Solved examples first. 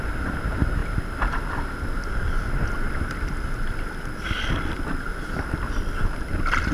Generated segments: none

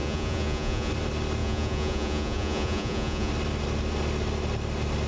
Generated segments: 0.0-0.9; 1.4-3.3

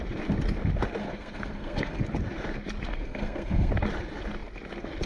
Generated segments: 1.0-2.0; 2.9-3.7

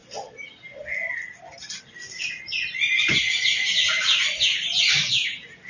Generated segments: none